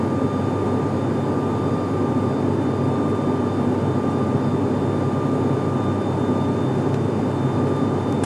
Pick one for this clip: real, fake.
real